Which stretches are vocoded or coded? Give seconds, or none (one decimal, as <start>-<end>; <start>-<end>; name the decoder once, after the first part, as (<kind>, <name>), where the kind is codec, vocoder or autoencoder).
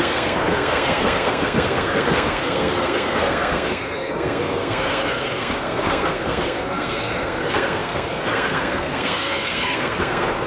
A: 0.0-10.5 (codec, SNAC)